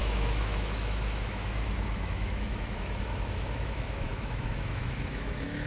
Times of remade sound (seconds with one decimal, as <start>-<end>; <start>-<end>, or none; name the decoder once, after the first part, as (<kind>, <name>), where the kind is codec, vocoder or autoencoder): 0.0-5.7 (autoencoder, DAC-VAE)